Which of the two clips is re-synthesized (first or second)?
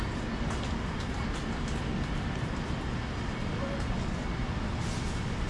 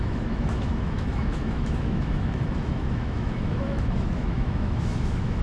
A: second